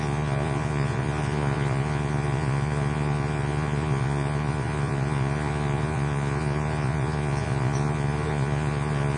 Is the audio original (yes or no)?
no